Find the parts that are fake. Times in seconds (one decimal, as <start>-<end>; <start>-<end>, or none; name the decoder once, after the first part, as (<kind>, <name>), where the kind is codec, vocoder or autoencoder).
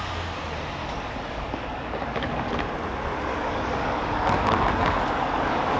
0.8-2.7 (codec, DAC); 3.3-5.8